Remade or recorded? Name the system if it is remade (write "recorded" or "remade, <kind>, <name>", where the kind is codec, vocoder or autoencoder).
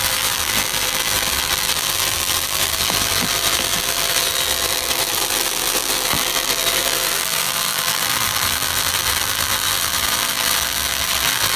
remade, vocoder, BigVGAN v2